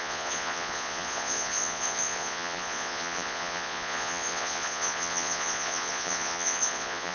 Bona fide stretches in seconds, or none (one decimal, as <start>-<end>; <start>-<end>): none